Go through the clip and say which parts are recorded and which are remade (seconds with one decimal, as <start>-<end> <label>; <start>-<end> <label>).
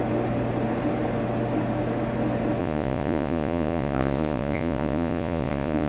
0.0-2.6 recorded; 2.6-5.9 remade